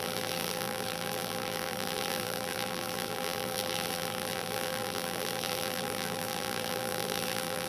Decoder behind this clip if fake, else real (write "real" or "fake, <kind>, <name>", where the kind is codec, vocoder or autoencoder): fake, vocoder, BigVGAN v2